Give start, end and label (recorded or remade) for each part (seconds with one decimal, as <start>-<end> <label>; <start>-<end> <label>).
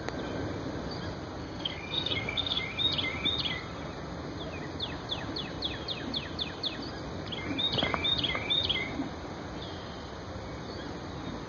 0.0-1.4 recorded; 1.4-2.6 remade; 2.6-11.5 recorded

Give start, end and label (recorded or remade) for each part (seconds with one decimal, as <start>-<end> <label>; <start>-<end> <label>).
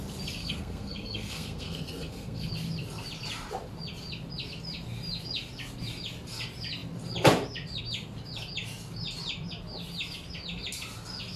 0.0-0.4 recorded; 0.4-2.5 remade; 2.5-11.4 recorded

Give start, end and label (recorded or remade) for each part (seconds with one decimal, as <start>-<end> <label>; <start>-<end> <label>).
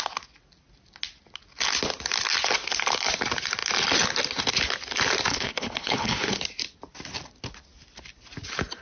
0.0-5.3 recorded; 5.3-6.4 remade; 6.4-8.8 recorded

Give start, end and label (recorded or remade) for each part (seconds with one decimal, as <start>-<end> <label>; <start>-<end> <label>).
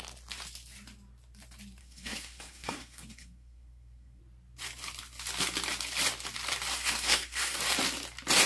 0.0-1.8 recorded; 1.8-4.2 remade; 4.2-6.7 recorded; 6.7-7.6 remade; 7.6-8.5 recorded